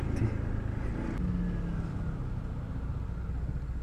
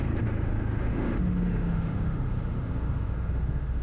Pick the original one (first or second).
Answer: first